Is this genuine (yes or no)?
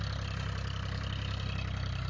yes